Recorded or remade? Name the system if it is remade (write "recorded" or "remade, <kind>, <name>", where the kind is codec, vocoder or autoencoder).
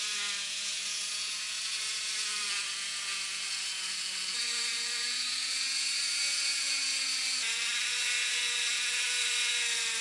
remade, vocoder, Vocos